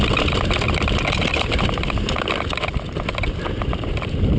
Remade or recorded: recorded